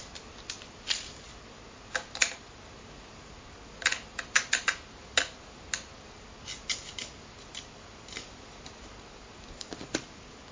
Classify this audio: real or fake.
real